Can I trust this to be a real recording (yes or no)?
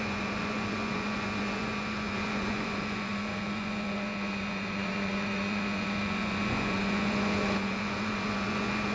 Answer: no